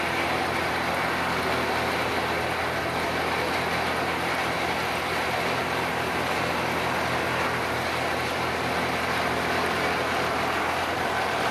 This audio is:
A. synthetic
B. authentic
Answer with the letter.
B